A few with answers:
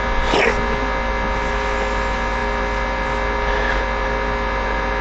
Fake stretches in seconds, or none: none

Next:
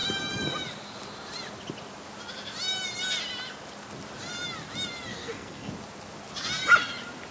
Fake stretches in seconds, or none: 5.1-5.7 (codec, SNAC)

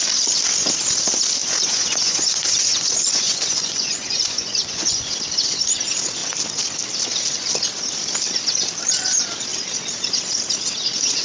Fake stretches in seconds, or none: 1.4-5.1 (vocoder, Vocos)

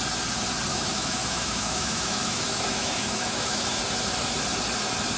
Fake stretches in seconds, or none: 0.7-3.8 (autoencoder, DAC-VAE)

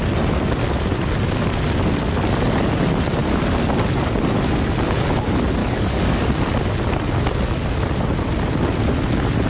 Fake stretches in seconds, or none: 5.6-6.3 (codec, DAC)

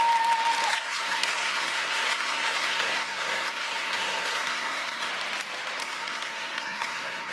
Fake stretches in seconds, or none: 0.7-5.1 (codec, SNAC); 5.8-7.3

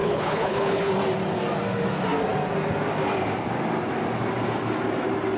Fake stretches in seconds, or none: 0.0-0.9 (codec, HILCodec)